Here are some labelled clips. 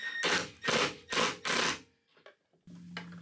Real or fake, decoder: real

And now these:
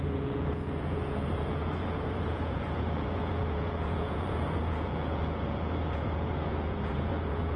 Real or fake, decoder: fake, vocoder, Vocos